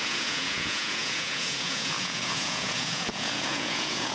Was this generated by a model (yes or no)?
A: yes